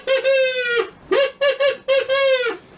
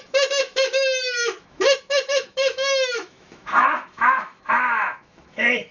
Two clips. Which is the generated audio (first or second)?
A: second